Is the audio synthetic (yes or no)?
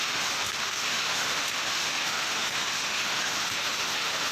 yes